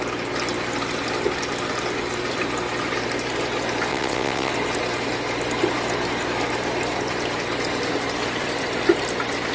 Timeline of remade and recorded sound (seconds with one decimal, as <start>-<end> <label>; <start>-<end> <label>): 0.0-3.9 recorded; 3.9-4.5 remade; 4.5-9.5 recorded

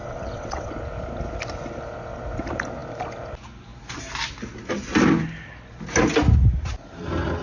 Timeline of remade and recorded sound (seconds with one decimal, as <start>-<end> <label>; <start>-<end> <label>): 0.0-0.7 remade; 0.7-7.4 recorded

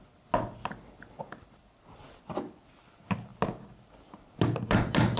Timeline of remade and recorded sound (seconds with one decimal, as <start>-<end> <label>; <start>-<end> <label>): 0.0-5.2 recorded

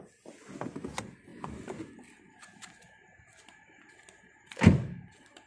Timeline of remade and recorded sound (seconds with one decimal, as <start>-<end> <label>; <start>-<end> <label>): 0.0-5.5 recorded

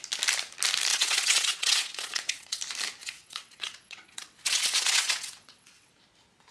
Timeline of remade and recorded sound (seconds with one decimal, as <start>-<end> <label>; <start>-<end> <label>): 0.0-0.9 recorded; 0.9-2.6 remade; 2.6-3.0 recorded; 3.0-5.9 remade; 5.9-6.5 recorded

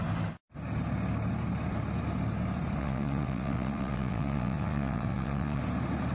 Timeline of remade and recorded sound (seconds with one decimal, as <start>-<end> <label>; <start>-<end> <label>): 0.0-2.8 recorded; 2.8-5.6 remade; 5.6-6.1 recorded